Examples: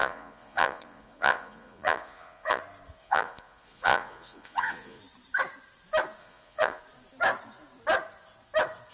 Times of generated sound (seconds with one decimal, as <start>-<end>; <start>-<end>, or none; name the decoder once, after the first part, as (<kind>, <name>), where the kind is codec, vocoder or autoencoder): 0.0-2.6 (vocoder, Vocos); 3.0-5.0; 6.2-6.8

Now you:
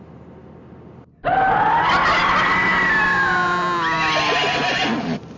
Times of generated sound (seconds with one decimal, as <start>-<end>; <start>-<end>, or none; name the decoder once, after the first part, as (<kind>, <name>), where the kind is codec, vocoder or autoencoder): none

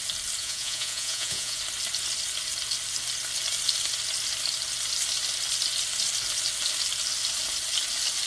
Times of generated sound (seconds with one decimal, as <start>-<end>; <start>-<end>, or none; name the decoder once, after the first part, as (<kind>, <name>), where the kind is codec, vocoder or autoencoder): 0.4-1.6 (vocoder, Vocos)

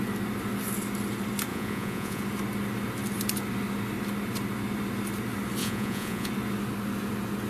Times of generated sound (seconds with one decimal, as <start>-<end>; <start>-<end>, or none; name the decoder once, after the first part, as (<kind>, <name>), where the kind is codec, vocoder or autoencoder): 1.5-2.2 (vocoder, Vocos); 5.6-6.3

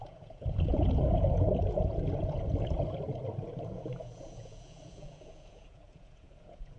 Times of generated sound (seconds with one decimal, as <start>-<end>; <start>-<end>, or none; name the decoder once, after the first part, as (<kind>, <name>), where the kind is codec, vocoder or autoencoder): 0.0-6.8 (vocoder, Vocos)

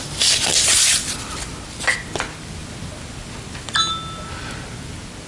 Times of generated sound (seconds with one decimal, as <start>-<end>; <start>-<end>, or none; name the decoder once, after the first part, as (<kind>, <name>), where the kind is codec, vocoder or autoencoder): none

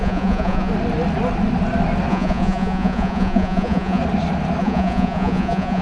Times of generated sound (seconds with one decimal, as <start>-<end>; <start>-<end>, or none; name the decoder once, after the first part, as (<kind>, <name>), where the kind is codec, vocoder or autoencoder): 0.0-0.7 (vocoder, Vocos); 2.1-4.0; 4.6-5.8